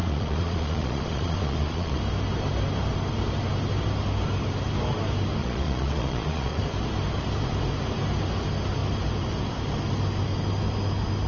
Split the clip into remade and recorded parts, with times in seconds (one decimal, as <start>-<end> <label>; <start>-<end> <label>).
0.0-2.0 remade; 2.0-5.4 recorded; 5.4-6.6 remade; 6.6-11.3 recorded